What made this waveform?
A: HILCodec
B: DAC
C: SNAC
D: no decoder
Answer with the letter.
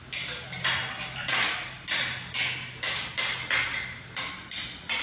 D